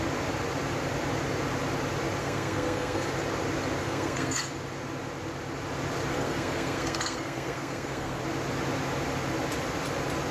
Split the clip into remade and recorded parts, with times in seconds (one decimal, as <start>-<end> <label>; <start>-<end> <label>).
0.0-2.2 recorded; 2.2-3.1 remade; 3.1-3.8 recorded; 3.8-4.5 remade; 4.5-6.1 recorded; 6.1-8.2 remade; 8.2-10.3 recorded